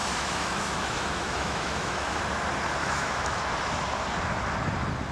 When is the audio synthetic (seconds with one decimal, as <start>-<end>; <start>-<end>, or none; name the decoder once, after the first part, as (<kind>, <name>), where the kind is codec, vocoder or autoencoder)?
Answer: 0.0-2.2 (autoencoder, DAC-VAE); 2.8-3.4